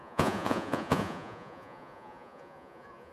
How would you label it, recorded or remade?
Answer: remade